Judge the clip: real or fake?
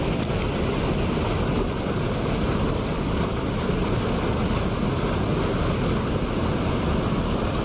real